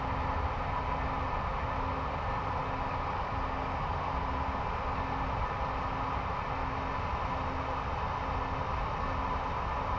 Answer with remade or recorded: recorded